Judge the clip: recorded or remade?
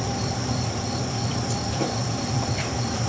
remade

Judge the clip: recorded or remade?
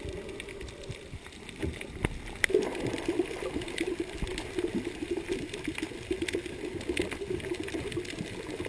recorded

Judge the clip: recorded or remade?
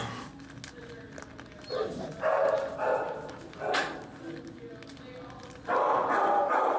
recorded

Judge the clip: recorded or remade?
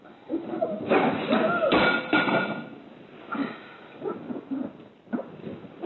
recorded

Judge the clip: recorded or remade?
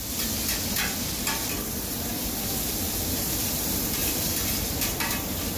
remade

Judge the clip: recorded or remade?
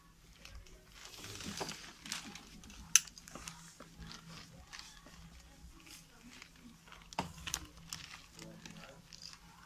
recorded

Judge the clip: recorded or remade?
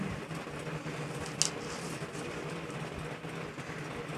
recorded